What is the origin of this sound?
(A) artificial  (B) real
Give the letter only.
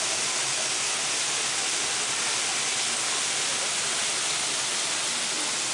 B